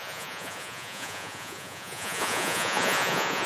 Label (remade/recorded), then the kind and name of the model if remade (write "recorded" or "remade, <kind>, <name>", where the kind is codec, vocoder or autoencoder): remade, vocoder, Vocos